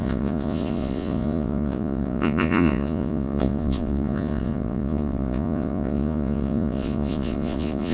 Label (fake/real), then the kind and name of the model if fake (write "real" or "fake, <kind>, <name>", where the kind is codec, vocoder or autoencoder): fake, vocoder, Vocos